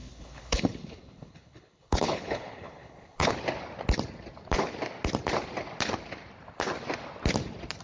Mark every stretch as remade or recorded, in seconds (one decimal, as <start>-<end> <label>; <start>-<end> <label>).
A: 0.0-3.3 remade; 3.3-7.8 recorded